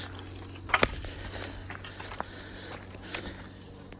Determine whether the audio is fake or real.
real